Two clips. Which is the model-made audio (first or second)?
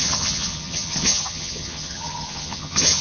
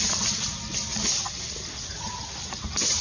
first